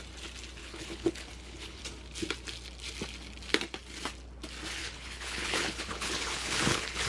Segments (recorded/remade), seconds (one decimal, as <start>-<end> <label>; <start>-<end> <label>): 0.0-0.6 recorded; 0.6-1.8 remade; 1.8-4.8 recorded; 4.8-7.1 remade